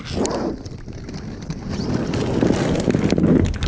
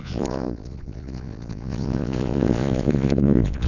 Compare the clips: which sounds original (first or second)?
first